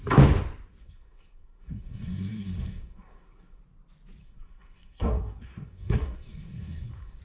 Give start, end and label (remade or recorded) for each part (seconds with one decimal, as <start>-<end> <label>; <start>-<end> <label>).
0.0-0.8 recorded; 0.8-3.6 remade; 3.6-4.2 recorded; 4.2-7.2 remade